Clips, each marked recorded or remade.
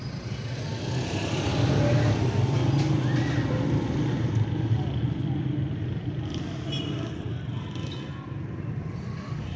recorded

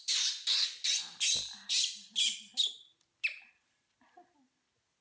recorded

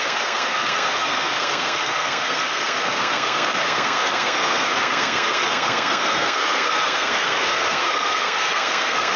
remade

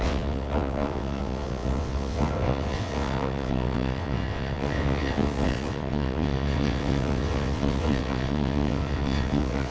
remade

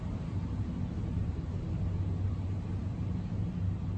recorded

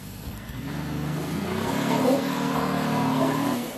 remade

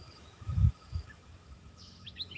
remade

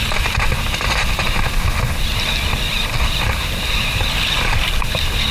recorded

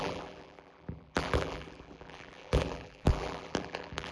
remade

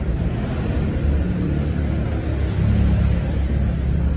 recorded